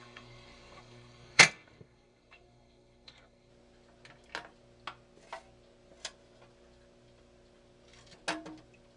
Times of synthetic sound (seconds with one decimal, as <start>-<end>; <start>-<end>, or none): 0.0-3.5

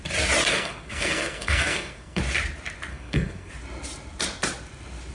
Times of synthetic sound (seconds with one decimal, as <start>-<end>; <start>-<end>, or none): 0.5-2.2; 2.9-3.5